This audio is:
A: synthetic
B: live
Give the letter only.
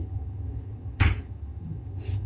A